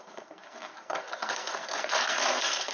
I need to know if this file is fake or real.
fake